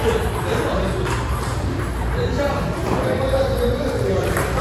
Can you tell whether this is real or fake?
real